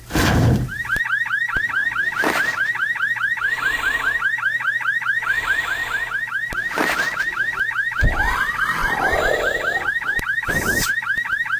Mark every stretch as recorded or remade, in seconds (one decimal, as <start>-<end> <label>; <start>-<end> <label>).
0.0-1.8 recorded; 1.8-4.2 remade; 4.2-8.8 recorded; 8.8-10.5 remade; 10.5-11.6 recorded